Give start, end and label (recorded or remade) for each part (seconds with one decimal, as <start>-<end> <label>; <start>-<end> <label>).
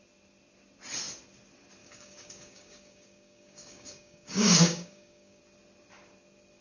0.0-1.8 recorded; 1.8-5.4 remade; 5.4-6.6 recorded